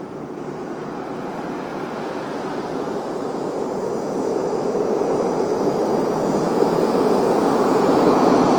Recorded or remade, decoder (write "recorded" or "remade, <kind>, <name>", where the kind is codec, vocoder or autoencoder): remade, vocoder, Vocos